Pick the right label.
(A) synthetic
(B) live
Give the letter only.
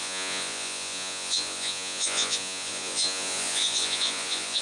A